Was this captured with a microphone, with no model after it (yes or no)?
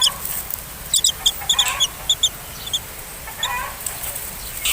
yes